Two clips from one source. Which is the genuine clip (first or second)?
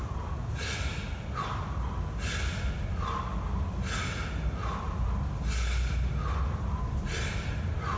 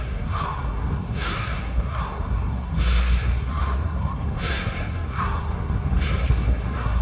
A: first